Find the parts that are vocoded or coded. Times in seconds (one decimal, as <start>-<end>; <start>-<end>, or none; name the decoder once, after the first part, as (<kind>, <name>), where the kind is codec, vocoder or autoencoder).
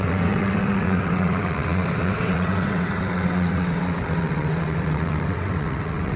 0.0-6.2 (vocoder, WaveNeXt)